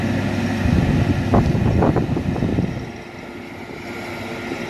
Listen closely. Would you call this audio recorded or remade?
recorded